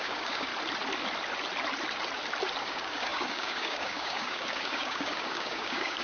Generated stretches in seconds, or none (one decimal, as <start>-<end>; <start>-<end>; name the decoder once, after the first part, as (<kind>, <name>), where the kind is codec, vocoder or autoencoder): 0.0-0.5 (codec, DAC); 2.6-6.0